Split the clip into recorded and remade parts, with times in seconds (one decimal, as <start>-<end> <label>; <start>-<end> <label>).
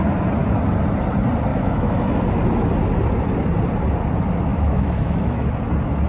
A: 0.0-1.5 recorded; 1.5-2.2 remade; 2.2-4.5 recorded; 4.5-5.5 remade; 5.5-6.1 recorded